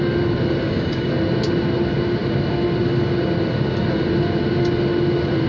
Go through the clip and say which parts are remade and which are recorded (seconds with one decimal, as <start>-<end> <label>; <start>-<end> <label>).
0.0-0.6 recorded; 0.6-1.1 remade; 1.1-5.5 recorded